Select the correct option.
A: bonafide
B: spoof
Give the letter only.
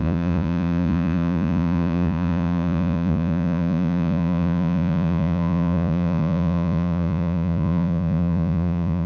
B